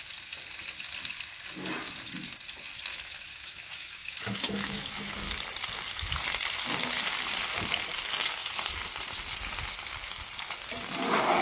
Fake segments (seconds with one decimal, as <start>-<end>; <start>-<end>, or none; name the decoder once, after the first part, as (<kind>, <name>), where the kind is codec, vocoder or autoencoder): 2.9-5.3 (autoencoder, DAC-VAE)